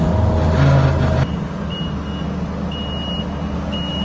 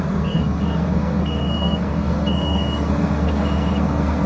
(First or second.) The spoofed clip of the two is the second